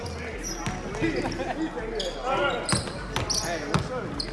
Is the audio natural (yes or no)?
yes